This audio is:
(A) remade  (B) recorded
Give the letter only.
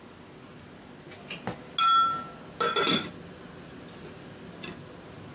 B